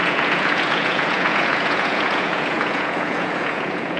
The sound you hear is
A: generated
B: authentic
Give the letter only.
A